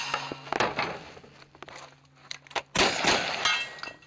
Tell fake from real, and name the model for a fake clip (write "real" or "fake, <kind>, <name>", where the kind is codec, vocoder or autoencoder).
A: real